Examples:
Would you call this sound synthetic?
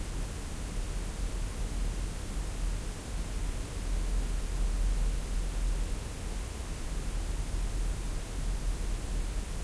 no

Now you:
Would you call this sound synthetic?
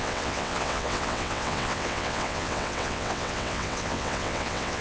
yes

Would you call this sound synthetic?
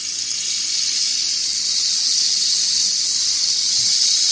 no